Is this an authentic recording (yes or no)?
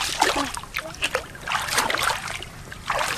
yes